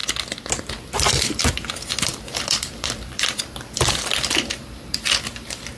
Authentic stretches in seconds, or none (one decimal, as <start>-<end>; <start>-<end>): 0.0-0.7